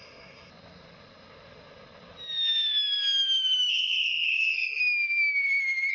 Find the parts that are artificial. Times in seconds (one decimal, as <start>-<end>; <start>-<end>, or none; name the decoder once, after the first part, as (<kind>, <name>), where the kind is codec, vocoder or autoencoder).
0.0-0.5 (codec, SNAC); 3.7-4.8